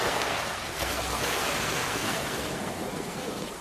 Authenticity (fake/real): fake